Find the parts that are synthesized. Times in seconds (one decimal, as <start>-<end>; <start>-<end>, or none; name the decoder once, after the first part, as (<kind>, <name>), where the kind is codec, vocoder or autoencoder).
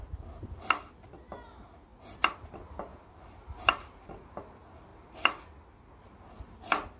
2.9-4.4 (vocoder, BigVGAN v2); 4.9-5.5